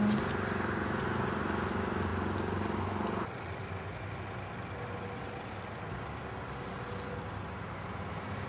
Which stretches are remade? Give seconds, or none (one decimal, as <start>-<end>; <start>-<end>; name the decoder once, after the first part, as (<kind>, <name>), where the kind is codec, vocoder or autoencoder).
none